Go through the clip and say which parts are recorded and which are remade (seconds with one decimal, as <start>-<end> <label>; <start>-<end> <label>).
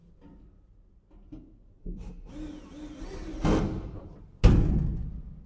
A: 0.0-1.8 recorded; 1.8-2.3 remade; 2.3-5.5 recorded